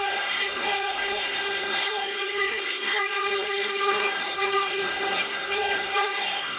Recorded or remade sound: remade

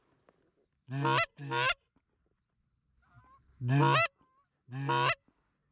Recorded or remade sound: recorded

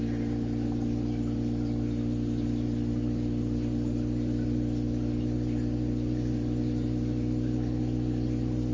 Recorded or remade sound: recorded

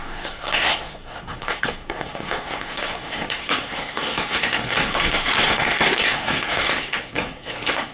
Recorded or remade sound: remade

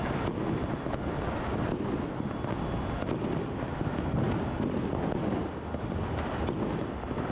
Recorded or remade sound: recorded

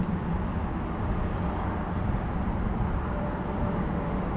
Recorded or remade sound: recorded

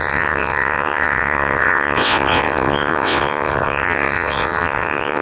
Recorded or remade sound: remade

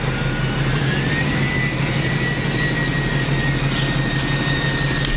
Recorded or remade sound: recorded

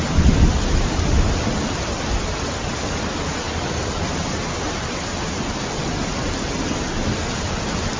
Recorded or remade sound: recorded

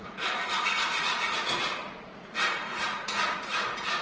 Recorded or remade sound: remade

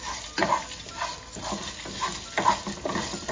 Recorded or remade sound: recorded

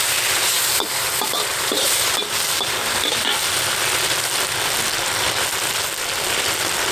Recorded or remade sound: recorded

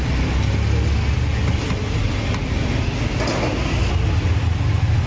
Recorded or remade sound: recorded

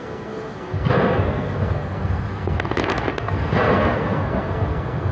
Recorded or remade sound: remade